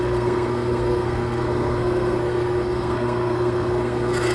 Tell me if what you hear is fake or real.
fake